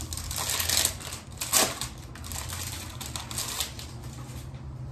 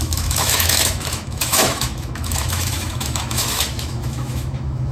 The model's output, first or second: second